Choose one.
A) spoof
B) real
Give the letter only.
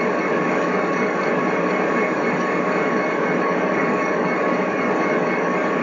A